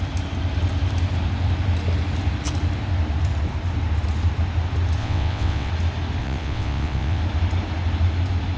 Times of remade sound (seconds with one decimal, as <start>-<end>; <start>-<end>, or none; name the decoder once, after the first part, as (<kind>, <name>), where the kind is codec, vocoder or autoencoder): 5.0-5.7 (vocoder, WaveNeXt); 6.2-7.2